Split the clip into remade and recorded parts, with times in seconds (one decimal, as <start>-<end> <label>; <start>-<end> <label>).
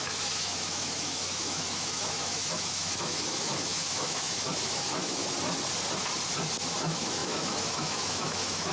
0.0-5.2 remade; 5.2-6.8 recorded; 6.8-8.7 remade